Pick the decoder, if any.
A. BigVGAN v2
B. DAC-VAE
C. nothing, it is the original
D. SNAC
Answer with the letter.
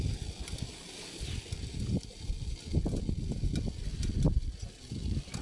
C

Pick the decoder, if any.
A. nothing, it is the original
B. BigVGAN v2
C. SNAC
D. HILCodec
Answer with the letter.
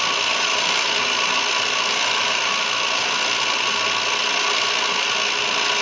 A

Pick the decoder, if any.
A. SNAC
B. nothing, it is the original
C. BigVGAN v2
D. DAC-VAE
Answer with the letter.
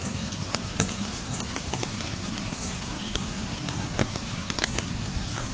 A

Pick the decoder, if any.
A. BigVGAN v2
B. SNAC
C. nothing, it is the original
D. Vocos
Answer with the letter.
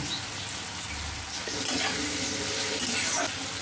C